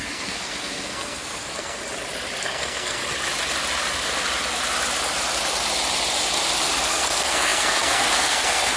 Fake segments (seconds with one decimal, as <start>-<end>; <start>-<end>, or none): 0.0-1.8; 2.4-3.0; 6.9-8.8